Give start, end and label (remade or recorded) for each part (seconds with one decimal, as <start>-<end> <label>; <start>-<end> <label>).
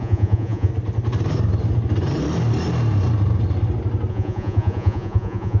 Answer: 0.0-0.7 remade; 0.7-4.1 recorded; 4.1-5.6 remade